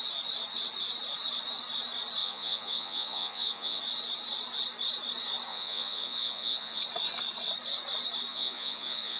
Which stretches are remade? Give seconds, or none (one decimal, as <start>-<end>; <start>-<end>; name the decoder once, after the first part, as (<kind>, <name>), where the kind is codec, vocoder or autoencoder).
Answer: 2.2-3.8 (vocoder, Vocos); 5.5-6.8; 8.3-9.2

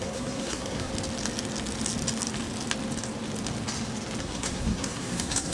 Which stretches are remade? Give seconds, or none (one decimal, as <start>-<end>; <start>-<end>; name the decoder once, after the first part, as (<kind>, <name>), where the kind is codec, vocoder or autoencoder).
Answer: 0.0-0.9 (codec, SNAC); 4.2-5.5

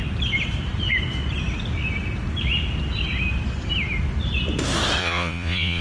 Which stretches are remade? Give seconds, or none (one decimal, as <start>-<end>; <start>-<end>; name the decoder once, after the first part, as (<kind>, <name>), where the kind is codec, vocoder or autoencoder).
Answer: 5.0-5.8 (vocoder, Vocos)

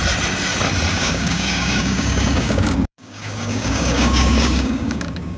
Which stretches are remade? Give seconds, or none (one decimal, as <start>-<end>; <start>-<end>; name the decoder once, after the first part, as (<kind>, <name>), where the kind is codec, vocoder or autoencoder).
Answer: 0.9-5.4 (codec, DAC)

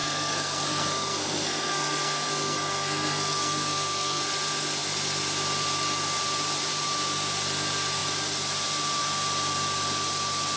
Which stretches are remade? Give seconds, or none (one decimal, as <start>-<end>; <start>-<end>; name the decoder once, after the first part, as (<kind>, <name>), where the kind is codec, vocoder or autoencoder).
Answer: 0.0-4.2 (codec, SNAC)